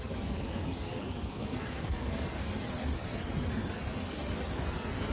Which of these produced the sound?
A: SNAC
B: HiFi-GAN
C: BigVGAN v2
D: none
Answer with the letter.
A